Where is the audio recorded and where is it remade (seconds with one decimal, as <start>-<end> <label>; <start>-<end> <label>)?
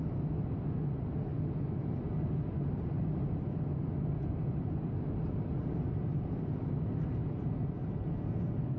0.0-8.8 recorded